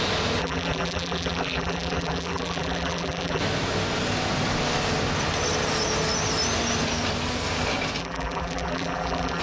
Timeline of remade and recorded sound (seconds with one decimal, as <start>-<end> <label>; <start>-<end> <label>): 0.0-0.4 recorded; 0.4-3.4 remade; 3.4-8.0 recorded; 8.0-9.4 remade